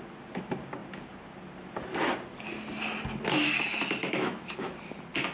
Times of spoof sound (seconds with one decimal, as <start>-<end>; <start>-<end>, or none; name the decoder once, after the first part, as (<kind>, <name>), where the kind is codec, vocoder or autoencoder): 4.0-4.8 (autoencoder, DAC-VAE)